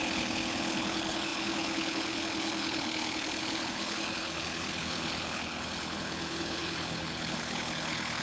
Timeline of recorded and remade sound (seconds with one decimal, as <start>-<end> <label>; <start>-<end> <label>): 0.0-8.2 remade